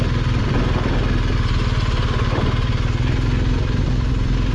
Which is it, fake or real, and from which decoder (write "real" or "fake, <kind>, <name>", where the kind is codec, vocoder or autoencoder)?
real